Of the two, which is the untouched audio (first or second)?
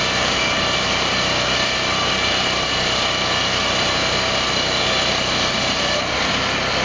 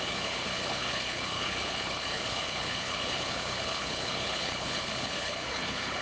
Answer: first